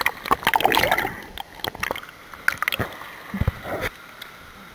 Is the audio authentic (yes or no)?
yes